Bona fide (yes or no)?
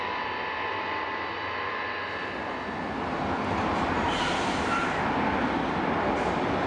yes